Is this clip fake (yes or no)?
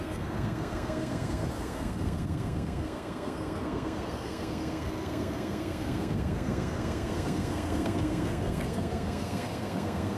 yes